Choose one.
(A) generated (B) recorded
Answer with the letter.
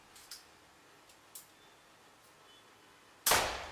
B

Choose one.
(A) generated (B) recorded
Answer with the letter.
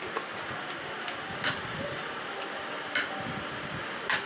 B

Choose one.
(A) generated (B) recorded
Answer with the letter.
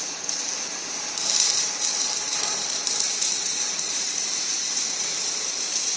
A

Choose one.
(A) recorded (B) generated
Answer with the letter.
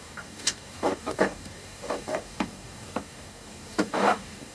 B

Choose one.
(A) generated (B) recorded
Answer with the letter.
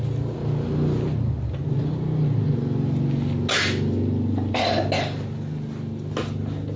B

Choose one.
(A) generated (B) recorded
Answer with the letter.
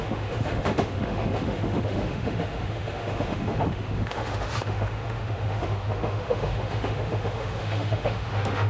A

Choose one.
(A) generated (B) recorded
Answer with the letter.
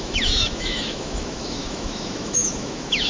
A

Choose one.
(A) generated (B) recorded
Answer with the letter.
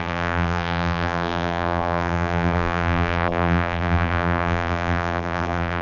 A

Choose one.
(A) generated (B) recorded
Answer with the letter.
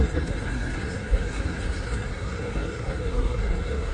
A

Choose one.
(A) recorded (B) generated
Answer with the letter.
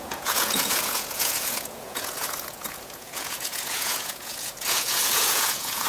B